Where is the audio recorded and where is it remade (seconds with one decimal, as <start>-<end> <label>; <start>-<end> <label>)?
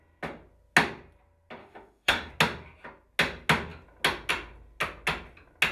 0.0-1.6 recorded; 1.6-2.3 remade; 2.3-5.7 recorded